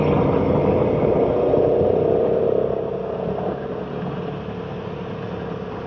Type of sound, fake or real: real